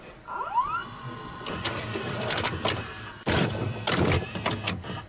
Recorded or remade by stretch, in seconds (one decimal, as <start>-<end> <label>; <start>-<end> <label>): 0.0-0.8 recorded; 0.8-3.9 remade; 3.9-5.1 recorded